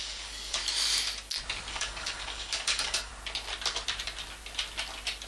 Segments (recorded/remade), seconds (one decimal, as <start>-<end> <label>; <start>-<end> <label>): 0.0-0.6 remade; 0.6-1.7 recorded; 1.7-3.1 remade; 3.1-5.3 recorded